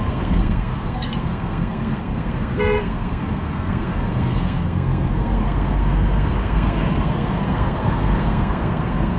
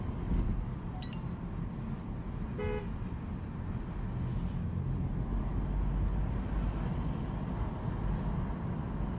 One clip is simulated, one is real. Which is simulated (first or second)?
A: first